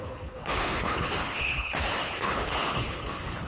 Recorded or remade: remade